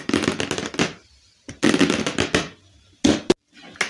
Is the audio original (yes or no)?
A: yes